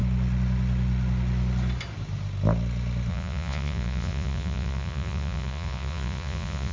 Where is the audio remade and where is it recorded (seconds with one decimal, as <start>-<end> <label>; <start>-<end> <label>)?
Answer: 0.0-3.1 recorded; 3.1-6.7 remade